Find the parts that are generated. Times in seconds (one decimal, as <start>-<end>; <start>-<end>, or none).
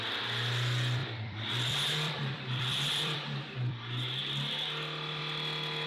1.0-3.8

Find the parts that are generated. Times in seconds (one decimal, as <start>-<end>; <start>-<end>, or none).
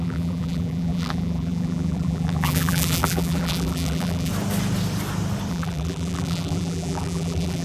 0.0-4.3; 5.5-7.6